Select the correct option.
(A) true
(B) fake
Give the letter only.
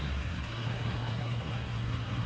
B